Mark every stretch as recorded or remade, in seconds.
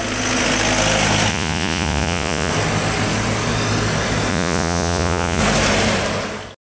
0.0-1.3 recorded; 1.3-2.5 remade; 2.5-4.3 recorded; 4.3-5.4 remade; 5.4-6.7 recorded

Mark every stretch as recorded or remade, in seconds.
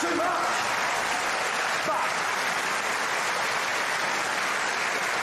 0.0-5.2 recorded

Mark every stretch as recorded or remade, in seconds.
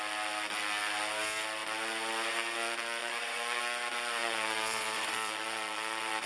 0.0-3.0 recorded; 3.0-3.6 remade; 3.6-4.2 recorded; 4.2-6.3 remade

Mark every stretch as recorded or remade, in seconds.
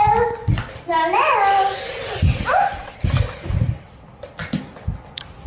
0.0-5.5 recorded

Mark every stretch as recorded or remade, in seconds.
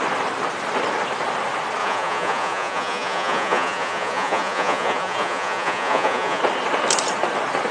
0.0-1.8 recorded; 1.8-6.4 remade; 6.4-7.7 recorded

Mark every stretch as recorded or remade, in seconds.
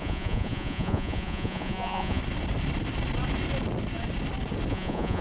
0.0-2.2 remade; 2.2-4.7 recorded; 4.7-5.2 remade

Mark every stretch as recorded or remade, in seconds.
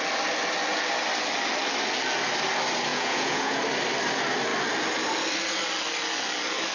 0.0-2.9 recorded; 2.9-3.6 remade; 3.6-6.7 recorded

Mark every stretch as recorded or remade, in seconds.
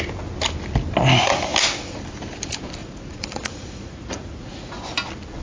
0.0-2.8 recorded; 2.8-4.8 remade; 4.8-5.4 recorded